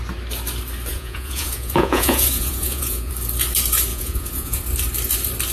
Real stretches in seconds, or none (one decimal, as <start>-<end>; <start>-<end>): 0.0-0.9; 3.1-3.9; 4.6-5.5